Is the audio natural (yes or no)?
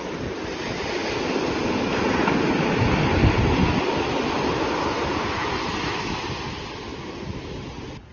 yes